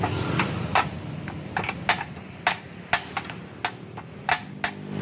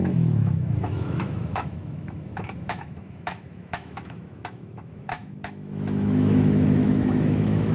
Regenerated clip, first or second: second